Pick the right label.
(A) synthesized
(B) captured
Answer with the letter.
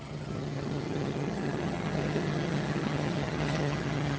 A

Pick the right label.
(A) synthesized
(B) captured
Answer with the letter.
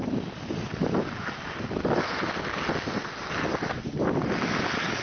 B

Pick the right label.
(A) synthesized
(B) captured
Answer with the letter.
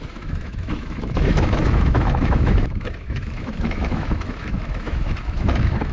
A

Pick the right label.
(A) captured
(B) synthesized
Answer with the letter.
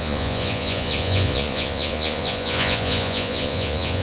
B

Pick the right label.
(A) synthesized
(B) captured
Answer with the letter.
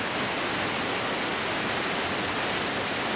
B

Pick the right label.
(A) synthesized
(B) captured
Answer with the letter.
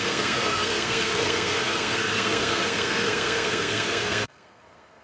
A